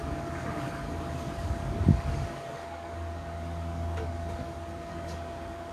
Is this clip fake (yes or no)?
yes